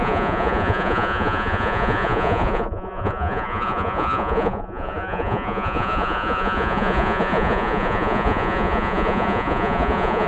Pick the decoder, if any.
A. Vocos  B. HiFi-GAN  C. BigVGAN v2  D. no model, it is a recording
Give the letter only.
A